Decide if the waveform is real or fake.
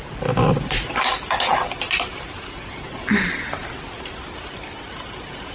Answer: real